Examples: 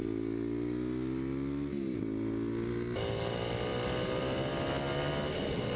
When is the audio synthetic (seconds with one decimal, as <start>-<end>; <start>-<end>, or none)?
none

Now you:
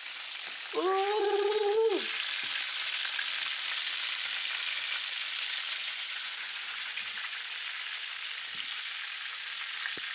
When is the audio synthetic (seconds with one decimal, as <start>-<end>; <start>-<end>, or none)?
5.8-7.4

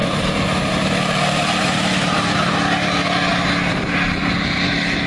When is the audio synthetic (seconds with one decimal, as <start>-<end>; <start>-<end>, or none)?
0.0-2.5; 3.3-4.2

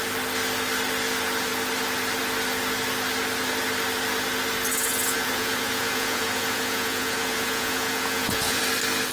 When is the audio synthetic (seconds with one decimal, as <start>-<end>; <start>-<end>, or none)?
4.7-8.6

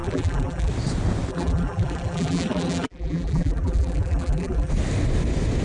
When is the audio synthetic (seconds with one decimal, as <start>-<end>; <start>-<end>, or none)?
0.0-0.7; 1.3-4.7